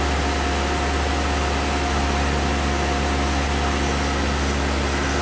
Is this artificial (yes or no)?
no